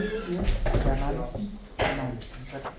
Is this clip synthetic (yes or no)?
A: no